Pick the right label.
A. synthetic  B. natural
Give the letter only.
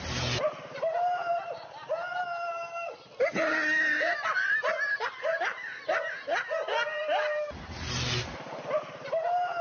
B